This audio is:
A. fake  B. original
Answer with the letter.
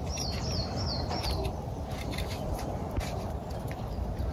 A